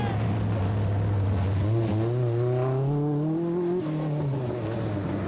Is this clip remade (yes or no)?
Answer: no